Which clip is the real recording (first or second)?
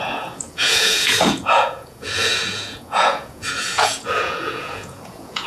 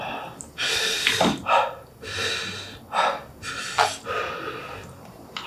second